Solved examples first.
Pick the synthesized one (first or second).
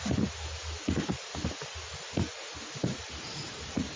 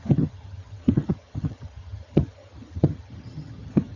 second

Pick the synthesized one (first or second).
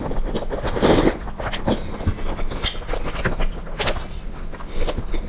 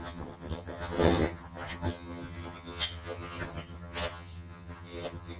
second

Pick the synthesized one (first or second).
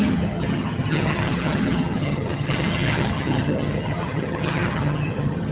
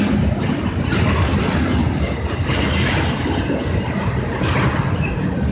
first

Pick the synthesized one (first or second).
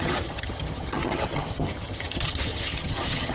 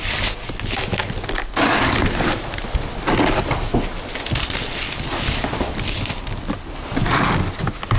first